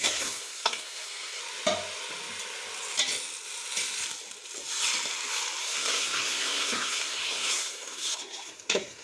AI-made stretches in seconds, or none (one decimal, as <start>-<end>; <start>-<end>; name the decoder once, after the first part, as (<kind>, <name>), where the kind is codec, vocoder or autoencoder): 0.0-1.4 (codec, SNAC); 5.6-9.0